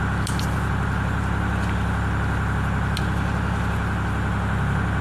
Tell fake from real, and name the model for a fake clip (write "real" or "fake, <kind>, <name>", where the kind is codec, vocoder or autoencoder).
real